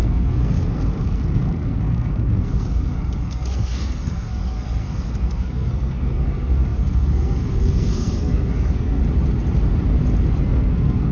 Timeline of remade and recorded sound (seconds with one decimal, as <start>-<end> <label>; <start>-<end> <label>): 0.0-9.0 remade; 9.0-10.4 recorded; 10.4-11.1 remade